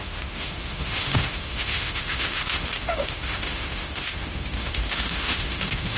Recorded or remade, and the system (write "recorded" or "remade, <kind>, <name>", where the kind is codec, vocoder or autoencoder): remade, autoencoder, DAC-VAE